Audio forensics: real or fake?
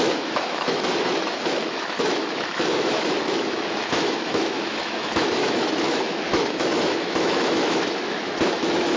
fake